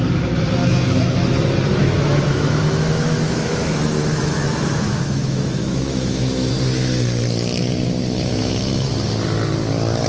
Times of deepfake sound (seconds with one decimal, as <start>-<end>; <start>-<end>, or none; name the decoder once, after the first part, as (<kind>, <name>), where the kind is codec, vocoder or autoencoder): 0.6-1.3 (autoencoder, DAC-VAE); 1.8-6.5; 8.0-8.9